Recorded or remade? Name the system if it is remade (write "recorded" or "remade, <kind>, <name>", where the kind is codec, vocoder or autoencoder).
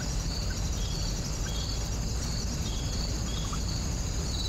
remade, vocoder, BigVGAN v2